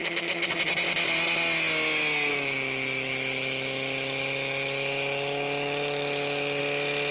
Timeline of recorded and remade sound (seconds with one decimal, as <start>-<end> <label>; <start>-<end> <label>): 0.0-0.5 remade; 0.5-2.3 recorded; 2.3-6.6 remade; 6.6-7.1 recorded